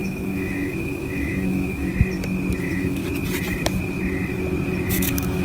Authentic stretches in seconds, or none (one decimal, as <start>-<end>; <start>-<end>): 1.9-2.6; 3.0-4.9

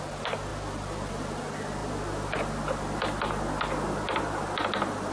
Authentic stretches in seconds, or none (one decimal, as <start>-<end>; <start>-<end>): 0.0-5.1

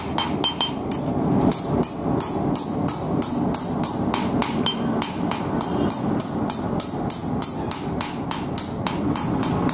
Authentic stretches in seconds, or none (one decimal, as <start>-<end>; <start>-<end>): 0.0-9.7

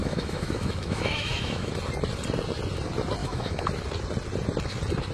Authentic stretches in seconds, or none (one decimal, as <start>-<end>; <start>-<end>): 1.7-3.2; 3.7-5.1

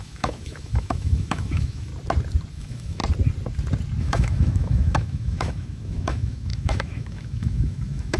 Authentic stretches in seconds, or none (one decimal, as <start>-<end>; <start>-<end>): 1.9-2.5; 3.0-4.0

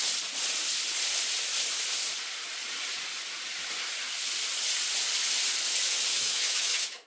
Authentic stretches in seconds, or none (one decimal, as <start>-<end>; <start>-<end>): 0.0-6.1

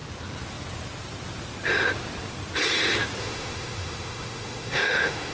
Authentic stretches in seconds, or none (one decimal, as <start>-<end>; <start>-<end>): 0.0-3.2

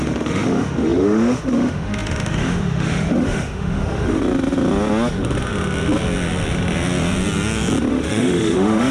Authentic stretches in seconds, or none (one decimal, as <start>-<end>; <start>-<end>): 4.2-7.9